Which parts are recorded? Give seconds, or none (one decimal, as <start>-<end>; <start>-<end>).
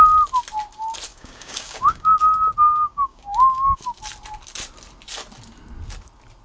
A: 0.0-1.1; 2.2-2.9; 3.8-6.4